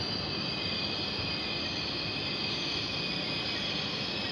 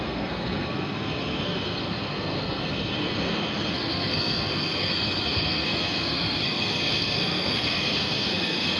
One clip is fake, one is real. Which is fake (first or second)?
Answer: second